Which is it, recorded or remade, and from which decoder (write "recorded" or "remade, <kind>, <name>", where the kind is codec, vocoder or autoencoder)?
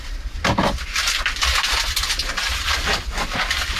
recorded